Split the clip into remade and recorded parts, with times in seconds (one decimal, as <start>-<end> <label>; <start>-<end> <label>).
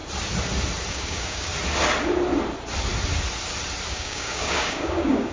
0.0-0.9 recorded; 0.9-1.5 remade; 1.5-3.9 recorded; 3.9-5.3 remade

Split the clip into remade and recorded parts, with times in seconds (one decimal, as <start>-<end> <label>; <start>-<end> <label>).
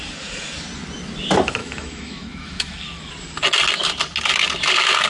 0.0-1.6 recorded; 1.6-3.1 remade; 3.1-5.1 recorded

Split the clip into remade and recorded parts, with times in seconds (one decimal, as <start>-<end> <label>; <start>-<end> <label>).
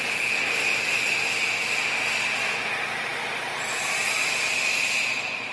0.0-3.1 recorded; 3.1-5.5 remade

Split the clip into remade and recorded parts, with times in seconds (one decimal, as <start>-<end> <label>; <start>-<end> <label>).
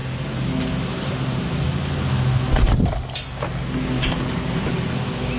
0.0-5.4 recorded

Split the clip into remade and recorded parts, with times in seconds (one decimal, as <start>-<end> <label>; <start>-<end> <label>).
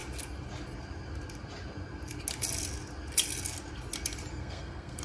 0.0-4.3 recorded; 4.3-5.0 remade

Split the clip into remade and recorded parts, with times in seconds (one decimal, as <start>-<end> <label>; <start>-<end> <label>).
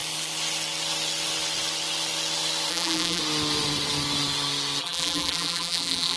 0.0-2.7 recorded; 2.7-3.2 remade; 3.2-4.8 recorded; 4.8-6.2 remade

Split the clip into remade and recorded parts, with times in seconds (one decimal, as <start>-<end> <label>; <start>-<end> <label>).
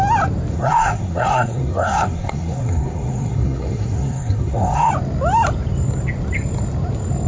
0.0-0.5 recorded; 0.5-4.9 remade; 4.9-7.3 recorded